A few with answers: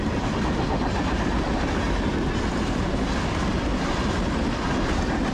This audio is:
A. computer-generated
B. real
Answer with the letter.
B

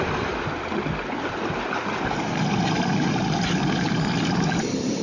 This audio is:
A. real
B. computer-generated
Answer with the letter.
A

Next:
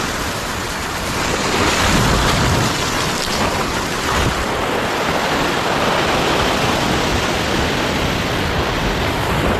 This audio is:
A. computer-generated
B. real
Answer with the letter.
A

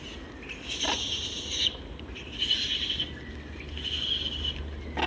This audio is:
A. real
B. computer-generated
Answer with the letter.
A